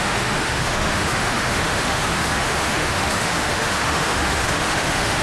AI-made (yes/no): yes